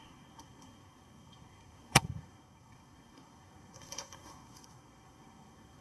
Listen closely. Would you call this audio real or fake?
fake